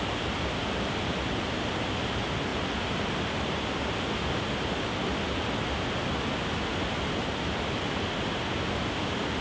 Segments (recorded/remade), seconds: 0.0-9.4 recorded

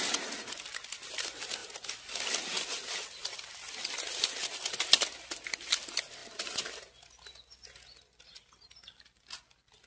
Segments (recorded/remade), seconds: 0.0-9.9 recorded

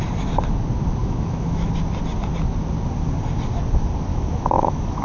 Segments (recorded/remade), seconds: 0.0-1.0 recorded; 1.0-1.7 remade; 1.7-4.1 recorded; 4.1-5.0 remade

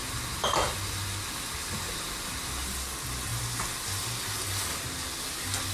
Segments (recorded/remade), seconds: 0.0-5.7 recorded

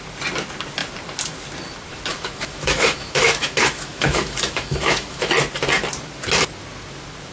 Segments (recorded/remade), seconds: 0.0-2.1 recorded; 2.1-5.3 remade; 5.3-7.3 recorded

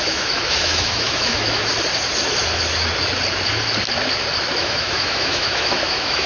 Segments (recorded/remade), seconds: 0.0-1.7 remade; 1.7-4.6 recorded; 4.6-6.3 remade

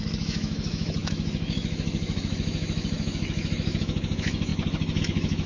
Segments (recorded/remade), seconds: 0.0-5.5 remade